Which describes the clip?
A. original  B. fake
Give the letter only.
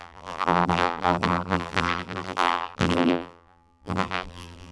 B